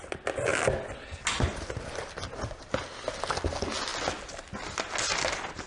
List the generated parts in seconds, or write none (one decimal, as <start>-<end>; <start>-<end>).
none